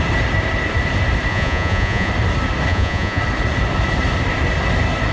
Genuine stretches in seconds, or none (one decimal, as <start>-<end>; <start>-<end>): 0.0-1.3; 2.1-2.7; 3.2-5.1